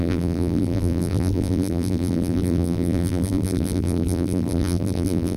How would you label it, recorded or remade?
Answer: remade